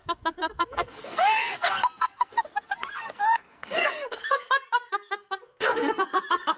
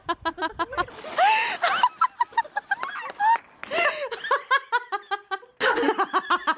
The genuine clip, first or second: second